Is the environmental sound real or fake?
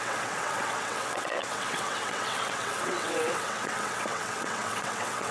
fake